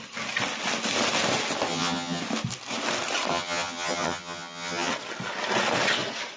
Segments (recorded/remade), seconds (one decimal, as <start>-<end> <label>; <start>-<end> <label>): 0.0-1.7 recorded; 1.7-2.2 remade; 2.2-3.3 recorded; 3.3-4.9 remade; 4.9-6.4 recorded